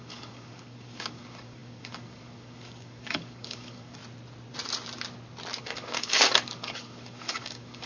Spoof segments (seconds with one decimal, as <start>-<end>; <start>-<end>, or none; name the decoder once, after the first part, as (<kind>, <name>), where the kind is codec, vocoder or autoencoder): 0.0-4.0 (codec, DAC); 5.6-7.9

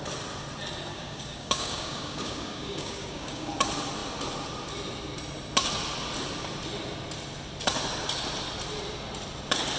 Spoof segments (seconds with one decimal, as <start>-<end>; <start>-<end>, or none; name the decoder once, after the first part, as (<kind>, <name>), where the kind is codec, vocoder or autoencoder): 0.9-3.5 (codec, DAC)

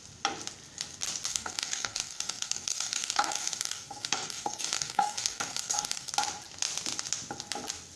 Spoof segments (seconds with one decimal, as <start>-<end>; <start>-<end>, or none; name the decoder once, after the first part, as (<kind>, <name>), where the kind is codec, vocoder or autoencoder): 1.3-6.1 (codec, DAC)

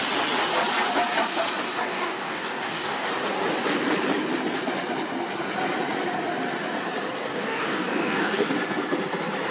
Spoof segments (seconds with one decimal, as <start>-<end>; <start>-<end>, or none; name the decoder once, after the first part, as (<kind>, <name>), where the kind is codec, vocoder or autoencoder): 1.8-3.1 (codec, DAC); 7.3-8.5

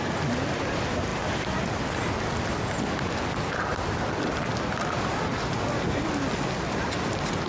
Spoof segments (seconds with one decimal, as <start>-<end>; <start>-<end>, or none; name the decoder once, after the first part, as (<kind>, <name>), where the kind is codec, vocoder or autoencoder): none

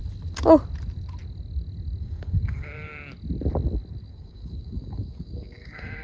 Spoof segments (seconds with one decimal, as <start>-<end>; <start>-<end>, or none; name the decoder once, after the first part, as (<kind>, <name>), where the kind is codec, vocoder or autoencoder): 2.0-2.9 (codec, DAC); 4.1-6.0

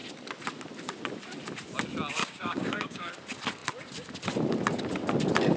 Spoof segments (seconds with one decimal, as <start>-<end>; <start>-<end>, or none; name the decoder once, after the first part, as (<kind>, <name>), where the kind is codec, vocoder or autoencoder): 2.2-3.1 (codec, DAC)